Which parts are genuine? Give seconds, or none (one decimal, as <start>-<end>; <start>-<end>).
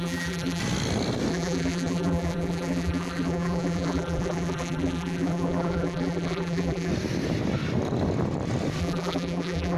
0.6-1.3; 6.9-8.8